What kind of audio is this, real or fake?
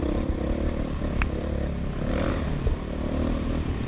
real